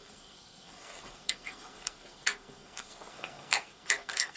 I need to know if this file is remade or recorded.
remade